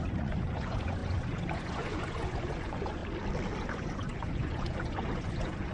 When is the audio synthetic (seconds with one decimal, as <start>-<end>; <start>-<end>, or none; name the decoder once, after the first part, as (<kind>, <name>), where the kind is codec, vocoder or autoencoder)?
0.0-3.0 (vocoder, Vocos); 3.6-5.7

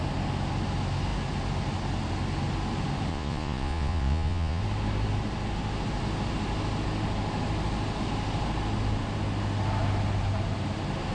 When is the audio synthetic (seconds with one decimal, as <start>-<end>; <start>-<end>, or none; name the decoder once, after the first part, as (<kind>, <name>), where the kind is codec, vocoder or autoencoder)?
3.1-4.6 (vocoder, Vocos)